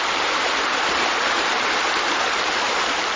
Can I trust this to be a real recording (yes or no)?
yes